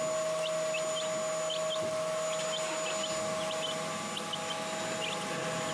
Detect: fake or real real